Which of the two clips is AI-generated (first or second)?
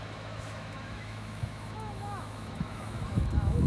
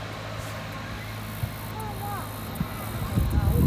first